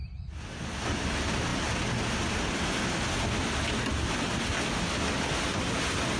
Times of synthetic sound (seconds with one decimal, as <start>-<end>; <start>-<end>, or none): none